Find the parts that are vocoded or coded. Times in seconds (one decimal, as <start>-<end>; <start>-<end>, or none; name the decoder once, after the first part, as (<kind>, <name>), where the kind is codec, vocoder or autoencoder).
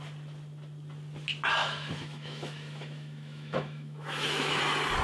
1.6-4.6 (autoencoder, DAC-VAE)